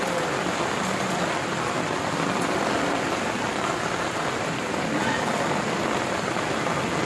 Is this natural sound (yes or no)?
yes